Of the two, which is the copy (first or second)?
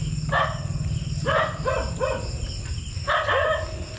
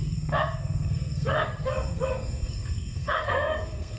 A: second